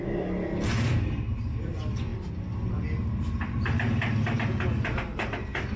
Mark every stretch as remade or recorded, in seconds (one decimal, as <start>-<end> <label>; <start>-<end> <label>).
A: 0.0-5.8 recorded